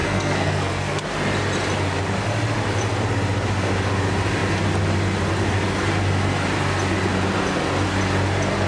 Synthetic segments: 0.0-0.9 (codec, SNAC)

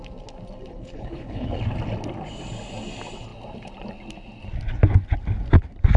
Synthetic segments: 0.7-1.6 (codec, HILCodec)

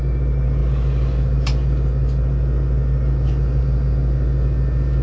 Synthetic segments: none

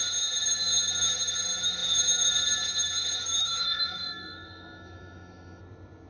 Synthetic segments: 3.4-5.6 (autoencoder, DAC-VAE)

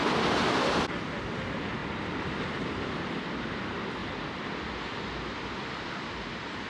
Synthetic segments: none

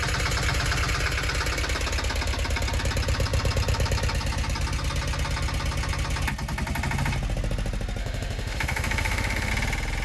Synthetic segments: 8.0-9.5 (autoencoder, DAC-VAE)

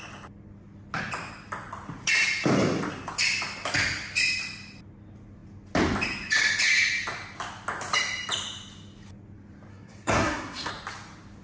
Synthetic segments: 9.7-10.7 (codec, SNAC)

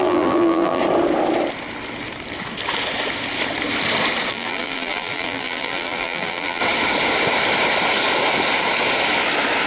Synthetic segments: 0.0-0.8 (vocoder, BigVGAN v2); 4.3-6.6